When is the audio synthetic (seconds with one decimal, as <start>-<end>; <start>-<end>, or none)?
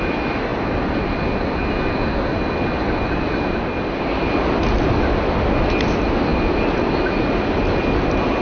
none